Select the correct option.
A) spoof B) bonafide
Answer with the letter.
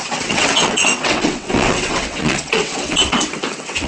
A